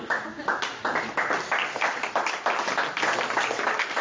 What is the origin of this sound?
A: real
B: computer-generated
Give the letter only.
A